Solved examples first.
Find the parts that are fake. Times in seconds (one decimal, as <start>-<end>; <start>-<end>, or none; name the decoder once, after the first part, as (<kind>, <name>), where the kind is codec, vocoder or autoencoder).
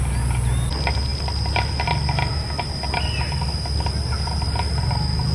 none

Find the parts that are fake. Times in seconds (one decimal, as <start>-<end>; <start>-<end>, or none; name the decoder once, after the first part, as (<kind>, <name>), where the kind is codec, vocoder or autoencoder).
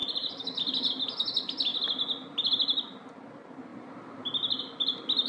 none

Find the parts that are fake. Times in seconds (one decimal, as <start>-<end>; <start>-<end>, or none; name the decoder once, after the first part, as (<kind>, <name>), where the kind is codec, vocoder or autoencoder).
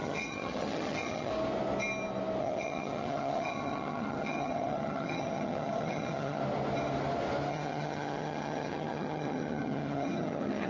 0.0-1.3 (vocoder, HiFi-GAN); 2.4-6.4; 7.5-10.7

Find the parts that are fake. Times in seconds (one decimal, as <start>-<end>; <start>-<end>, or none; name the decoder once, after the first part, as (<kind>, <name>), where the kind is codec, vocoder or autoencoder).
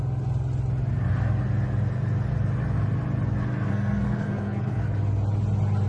3.7-4.8 (codec, SNAC)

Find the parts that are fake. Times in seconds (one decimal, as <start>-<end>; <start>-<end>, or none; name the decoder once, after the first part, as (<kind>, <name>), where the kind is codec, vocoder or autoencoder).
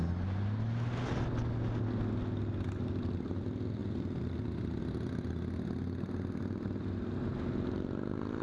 none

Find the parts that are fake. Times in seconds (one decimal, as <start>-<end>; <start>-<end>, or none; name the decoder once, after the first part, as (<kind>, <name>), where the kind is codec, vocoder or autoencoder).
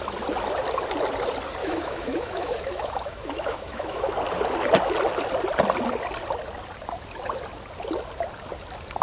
1.6-4.1 (autoencoder, DAC-VAE)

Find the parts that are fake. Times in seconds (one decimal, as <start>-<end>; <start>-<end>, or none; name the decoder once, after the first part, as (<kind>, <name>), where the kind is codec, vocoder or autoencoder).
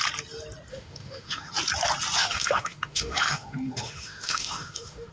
0.7-1.5 (autoencoder, DAC-VAE); 2.2-5.1